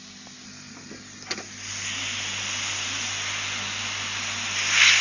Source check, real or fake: real